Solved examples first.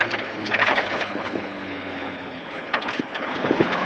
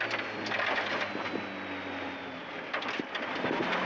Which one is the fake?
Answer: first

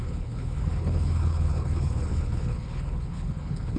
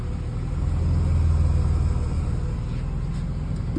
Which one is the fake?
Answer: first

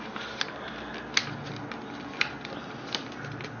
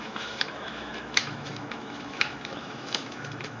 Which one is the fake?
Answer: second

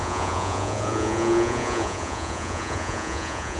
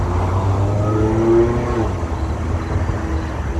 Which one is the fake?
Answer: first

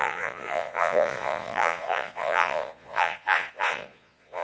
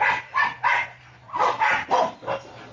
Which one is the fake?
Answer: first